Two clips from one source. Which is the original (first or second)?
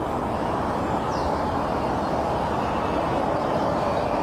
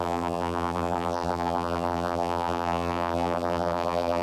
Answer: first